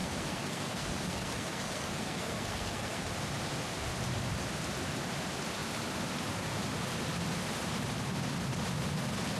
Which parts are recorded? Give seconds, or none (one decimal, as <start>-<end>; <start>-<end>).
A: 3.1-9.4